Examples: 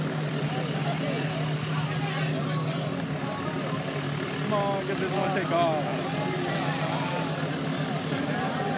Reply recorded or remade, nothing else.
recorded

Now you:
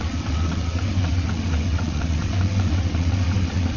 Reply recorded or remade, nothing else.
remade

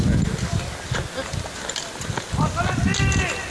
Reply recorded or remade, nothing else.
recorded